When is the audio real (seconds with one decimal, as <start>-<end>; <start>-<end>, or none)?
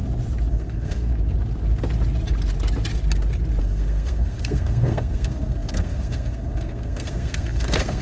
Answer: 0.0-0.5; 1.1-3.6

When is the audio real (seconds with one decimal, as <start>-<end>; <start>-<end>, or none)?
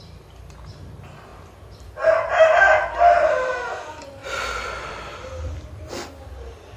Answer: 0.0-4.2; 5.8-6.8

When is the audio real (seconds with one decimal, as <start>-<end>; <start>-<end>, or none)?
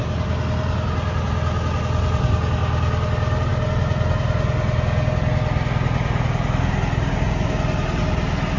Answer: 0.0-8.6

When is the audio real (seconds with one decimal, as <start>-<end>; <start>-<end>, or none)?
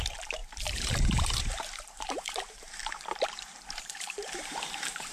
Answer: none